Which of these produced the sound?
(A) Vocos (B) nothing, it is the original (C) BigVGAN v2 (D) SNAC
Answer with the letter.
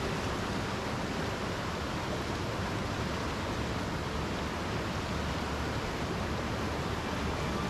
B